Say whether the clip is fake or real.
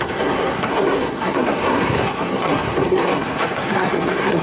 fake